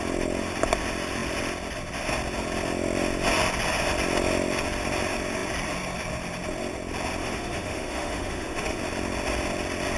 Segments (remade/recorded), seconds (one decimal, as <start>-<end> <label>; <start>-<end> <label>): 0.0-7.2 recorded; 7.2-8.8 remade; 8.8-10.0 recorded